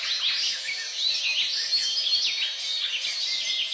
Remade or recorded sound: recorded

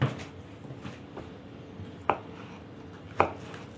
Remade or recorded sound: recorded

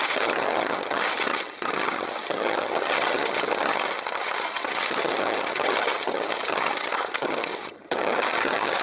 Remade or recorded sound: remade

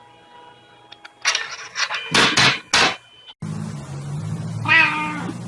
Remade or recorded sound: recorded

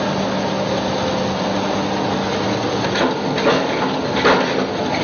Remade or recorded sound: recorded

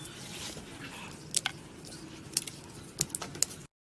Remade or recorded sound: recorded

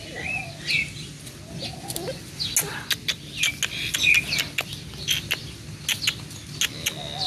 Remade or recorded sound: recorded